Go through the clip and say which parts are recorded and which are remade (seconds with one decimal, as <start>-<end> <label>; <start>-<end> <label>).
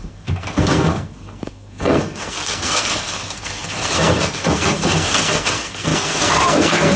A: 0.0-7.0 remade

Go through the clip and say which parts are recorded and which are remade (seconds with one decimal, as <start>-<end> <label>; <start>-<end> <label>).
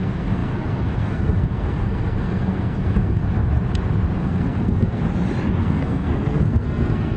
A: 0.0-3.2 remade; 3.2-4.2 recorded; 4.2-5.0 remade; 5.0-5.6 recorded; 5.6-7.2 remade